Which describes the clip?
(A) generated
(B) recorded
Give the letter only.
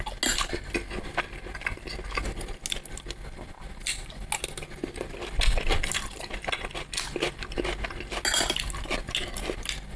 B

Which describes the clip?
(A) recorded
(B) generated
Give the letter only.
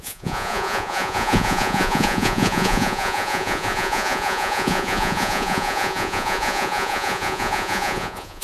B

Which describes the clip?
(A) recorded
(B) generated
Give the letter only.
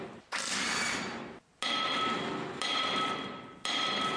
A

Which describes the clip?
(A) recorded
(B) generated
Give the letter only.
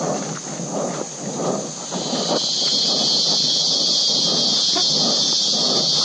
A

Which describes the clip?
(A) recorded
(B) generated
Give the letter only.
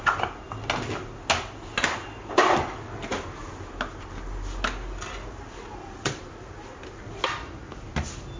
A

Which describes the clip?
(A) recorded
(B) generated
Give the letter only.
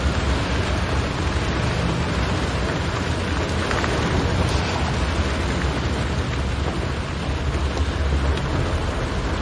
A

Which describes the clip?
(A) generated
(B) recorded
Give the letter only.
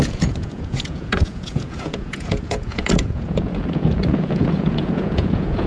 A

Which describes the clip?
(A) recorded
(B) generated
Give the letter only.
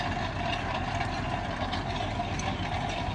A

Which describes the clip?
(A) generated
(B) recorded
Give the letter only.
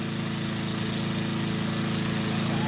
B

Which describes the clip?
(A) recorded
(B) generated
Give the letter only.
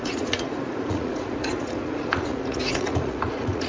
B